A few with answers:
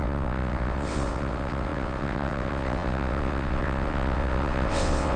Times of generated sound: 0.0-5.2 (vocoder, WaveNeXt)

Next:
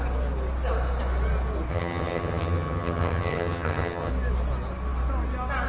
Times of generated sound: 1.7-4.1 (vocoder, HiFi-GAN)

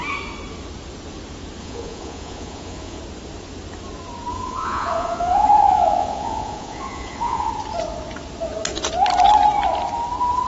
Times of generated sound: 1.6-3.0 (vocoder, Vocos); 4.3-7.5

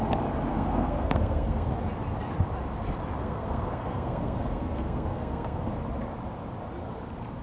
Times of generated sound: 0.5-1.7 (codec, SNAC); 3.2-5.7